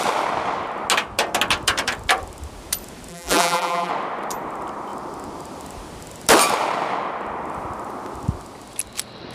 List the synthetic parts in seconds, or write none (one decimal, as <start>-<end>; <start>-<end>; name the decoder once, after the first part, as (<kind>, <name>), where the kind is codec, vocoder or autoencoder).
3.1-3.9 (vocoder, BigVGAN v2)